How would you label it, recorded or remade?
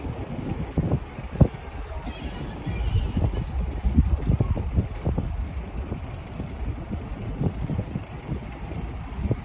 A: recorded